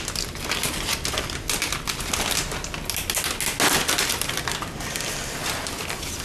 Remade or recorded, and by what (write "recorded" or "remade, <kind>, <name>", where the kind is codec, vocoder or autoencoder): recorded